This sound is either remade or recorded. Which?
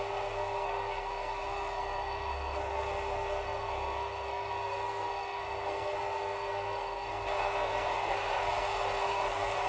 remade